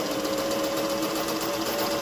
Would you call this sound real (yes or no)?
yes